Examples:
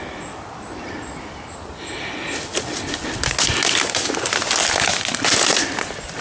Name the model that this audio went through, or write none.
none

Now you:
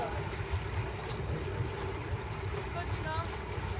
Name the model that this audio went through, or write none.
none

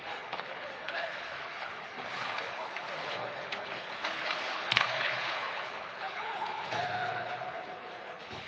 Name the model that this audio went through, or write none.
codec, HILCodec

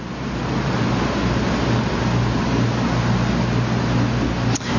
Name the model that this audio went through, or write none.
none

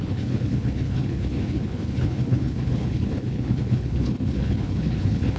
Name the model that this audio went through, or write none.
codec, HILCodec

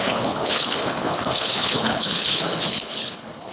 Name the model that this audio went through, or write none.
codec, HILCodec